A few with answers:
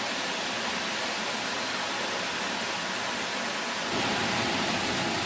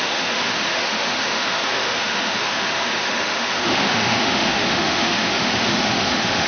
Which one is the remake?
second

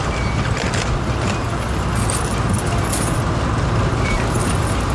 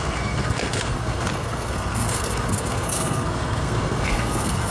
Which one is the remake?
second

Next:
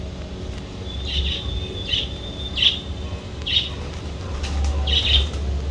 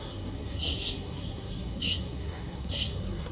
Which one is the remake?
second